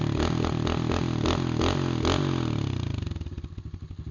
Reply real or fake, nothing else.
real